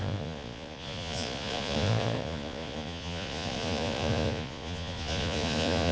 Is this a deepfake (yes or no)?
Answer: yes